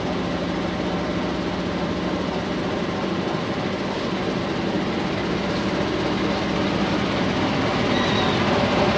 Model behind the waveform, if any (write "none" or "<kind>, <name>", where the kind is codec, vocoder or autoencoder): none